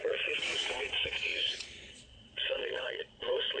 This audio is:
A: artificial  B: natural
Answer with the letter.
A